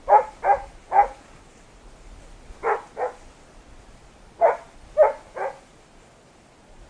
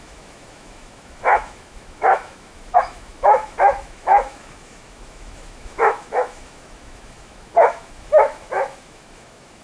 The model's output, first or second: second